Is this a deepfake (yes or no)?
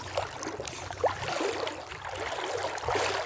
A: no